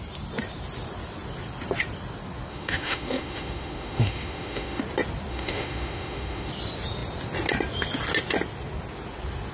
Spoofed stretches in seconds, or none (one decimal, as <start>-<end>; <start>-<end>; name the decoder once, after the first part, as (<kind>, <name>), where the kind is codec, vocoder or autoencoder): 2.5-4.8 (autoencoder, DAC-VAE); 5.3-6.5